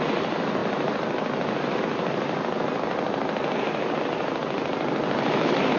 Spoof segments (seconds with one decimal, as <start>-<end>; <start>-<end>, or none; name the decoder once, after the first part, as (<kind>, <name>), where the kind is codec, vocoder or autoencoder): none